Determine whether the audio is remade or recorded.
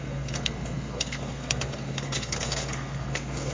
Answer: remade